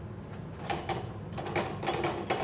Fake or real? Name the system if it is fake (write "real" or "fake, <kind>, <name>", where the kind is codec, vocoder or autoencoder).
real